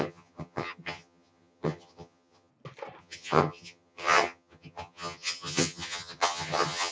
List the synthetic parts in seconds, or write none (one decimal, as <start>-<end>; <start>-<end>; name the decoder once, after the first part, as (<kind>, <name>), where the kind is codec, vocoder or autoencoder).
0.0-2.5 (vocoder, HiFi-GAN); 3.0-6.9